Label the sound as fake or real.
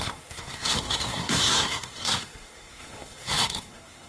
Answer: fake